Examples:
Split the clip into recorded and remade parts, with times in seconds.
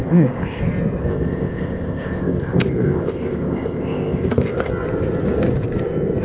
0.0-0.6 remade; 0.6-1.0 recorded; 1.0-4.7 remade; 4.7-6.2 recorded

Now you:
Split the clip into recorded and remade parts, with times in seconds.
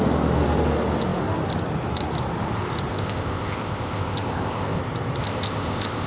0.0-2.9 recorded; 2.9-4.8 remade; 4.8-5.2 recorded; 5.2-6.1 remade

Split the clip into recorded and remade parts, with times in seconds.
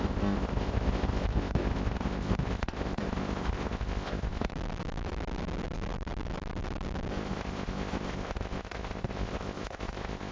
0.0-4.5 remade; 4.5-7.1 recorded; 7.1-10.3 remade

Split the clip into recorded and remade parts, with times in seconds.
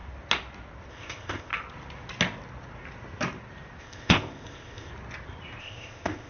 0.0-0.9 recorded; 0.9-1.5 remade; 1.5-3.8 recorded; 3.8-4.9 remade; 4.9-5.6 recorded; 5.6-6.3 remade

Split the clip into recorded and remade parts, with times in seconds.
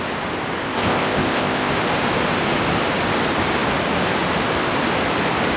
0.0-0.6 recorded; 0.6-1.7 remade; 1.7-5.6 recorded